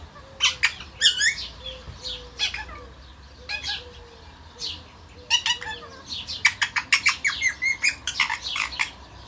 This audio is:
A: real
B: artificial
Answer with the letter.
A